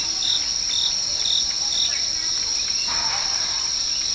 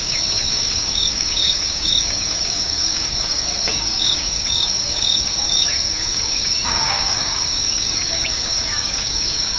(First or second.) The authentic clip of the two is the first